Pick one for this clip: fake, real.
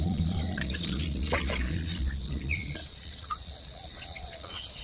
fake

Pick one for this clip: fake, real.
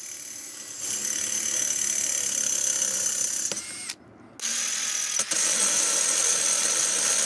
real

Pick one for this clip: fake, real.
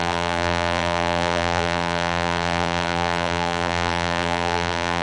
fake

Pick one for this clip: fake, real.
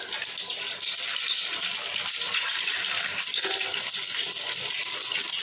real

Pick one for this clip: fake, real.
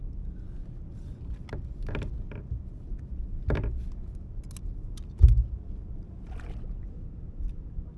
real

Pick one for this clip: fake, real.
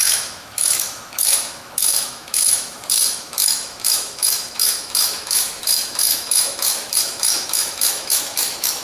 fake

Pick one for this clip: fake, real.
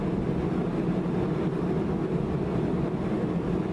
real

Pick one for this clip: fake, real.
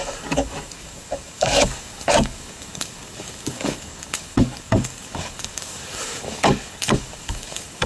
fake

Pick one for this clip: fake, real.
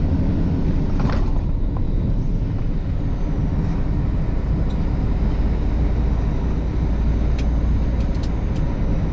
real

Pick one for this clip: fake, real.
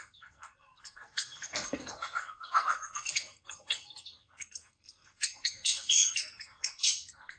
fake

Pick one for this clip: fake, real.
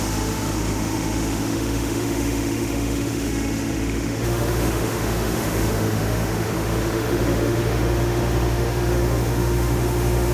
fake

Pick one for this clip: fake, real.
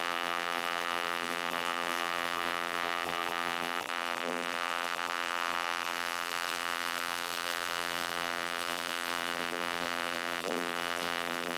fake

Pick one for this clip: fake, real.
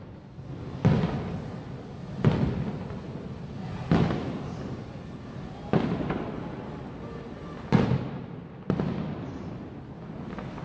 real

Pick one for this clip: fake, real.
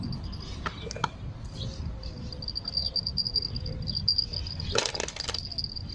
real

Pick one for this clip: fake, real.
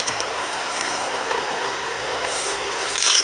fake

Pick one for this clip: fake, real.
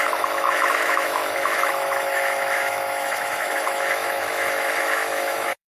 fake